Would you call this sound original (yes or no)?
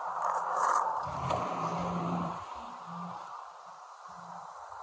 no